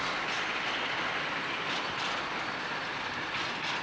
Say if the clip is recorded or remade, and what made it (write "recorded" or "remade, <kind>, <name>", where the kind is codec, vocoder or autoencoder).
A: recorded